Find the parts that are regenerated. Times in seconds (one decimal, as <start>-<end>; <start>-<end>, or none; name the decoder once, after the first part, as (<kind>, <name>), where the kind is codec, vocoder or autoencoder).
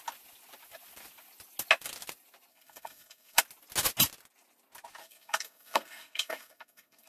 2.5-3.4 (codec, SNAC); 5.0-7.1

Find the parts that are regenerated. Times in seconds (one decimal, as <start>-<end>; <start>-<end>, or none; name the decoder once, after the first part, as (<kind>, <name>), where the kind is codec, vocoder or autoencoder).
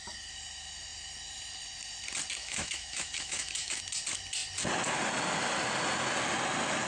2.4-3.8 (autoencoder, DAC-VAE)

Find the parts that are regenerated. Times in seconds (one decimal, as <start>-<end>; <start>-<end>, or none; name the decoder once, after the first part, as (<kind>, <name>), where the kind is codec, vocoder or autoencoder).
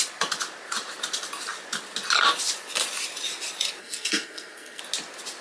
3.8-4.8 (codec, SNAC)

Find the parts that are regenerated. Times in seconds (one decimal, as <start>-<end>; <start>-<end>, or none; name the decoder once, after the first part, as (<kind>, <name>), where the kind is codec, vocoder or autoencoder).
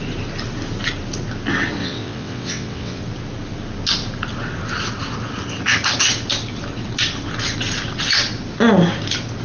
1.8-3.0 (vocoder, WaveNeXt)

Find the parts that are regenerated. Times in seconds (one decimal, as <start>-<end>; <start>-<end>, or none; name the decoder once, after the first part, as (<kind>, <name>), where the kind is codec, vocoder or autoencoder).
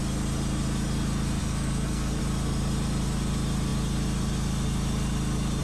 1.4-2.2 (codec, SNAC)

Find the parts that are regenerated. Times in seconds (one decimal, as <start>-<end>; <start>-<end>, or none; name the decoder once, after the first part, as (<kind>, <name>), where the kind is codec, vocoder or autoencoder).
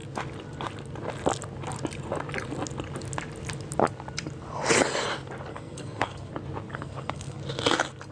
5.5-6.3 (codec, SNAC); 6.7-7.4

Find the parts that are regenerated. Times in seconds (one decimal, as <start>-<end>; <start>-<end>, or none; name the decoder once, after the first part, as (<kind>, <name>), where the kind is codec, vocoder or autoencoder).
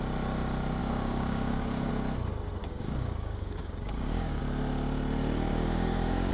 0.8-1.9 (codec, DAC); 2.6-4.4; 5.5-6.3